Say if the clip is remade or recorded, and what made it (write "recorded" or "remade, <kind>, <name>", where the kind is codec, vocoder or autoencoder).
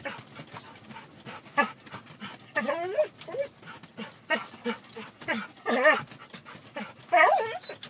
recorded